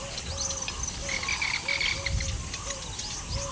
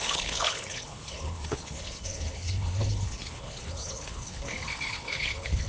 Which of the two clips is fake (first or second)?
second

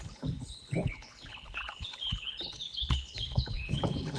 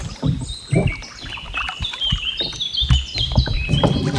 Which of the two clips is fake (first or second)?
first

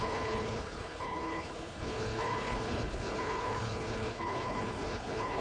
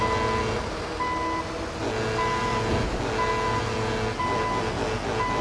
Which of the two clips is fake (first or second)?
first